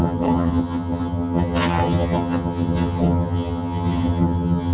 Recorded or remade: remade